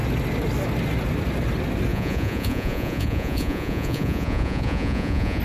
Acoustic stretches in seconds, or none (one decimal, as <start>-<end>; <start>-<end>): 0.0-1.9